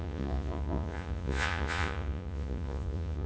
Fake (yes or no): yes